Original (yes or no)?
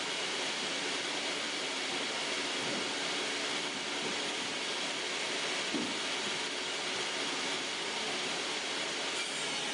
yes